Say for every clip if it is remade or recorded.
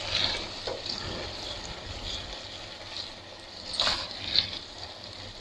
recorded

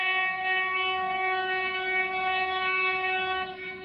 remade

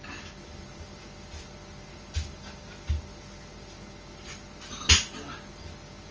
recorded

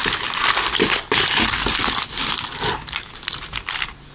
recorded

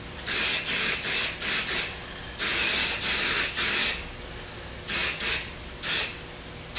recorded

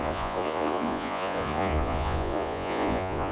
remade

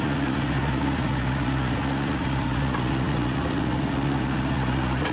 remade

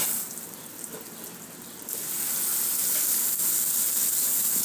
recorded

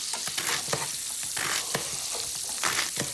recorded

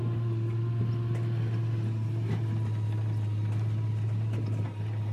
recorded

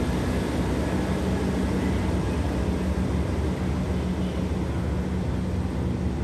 recorded